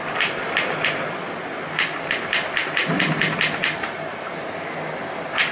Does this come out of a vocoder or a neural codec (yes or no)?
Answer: no